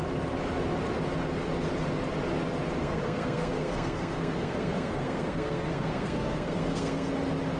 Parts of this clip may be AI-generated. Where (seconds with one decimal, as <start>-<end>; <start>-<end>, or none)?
2.8-7.1